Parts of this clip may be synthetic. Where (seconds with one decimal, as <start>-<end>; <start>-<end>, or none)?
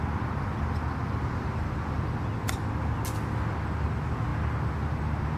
none